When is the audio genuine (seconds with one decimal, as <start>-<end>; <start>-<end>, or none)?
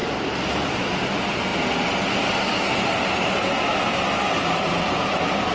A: 1.5-4.6